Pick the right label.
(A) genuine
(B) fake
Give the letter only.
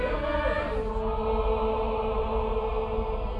A